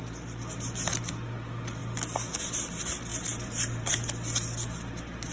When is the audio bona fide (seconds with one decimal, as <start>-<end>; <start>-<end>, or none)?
0.0-5.3